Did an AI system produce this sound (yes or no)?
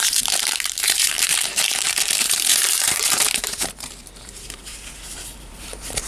yes